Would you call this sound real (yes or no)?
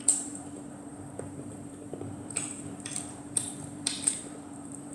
no